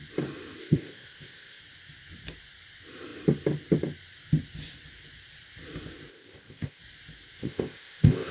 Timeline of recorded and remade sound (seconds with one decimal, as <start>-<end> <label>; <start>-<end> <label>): 0.0-0.6 recorded; 0.6-1.6 remade; 1.6-6.1 recorded; 6.1-6.8 remade; 6.8-7.4 recorded; 7.4-8.3 remade